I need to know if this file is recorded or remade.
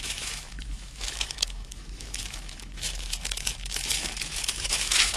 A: remade